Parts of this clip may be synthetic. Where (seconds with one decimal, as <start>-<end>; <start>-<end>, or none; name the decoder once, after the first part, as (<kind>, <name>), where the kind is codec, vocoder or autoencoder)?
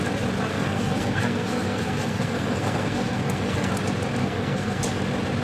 0.5-3.7 (codec, SNAC); 4.2-5.0